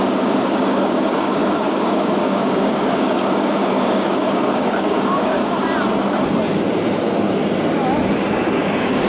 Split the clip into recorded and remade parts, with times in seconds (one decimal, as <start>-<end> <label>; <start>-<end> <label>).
0.0-5.4 remade; 5.4-8.3 recorded; 8.3-9.1 remade